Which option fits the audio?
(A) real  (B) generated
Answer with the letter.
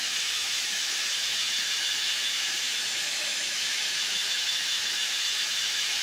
B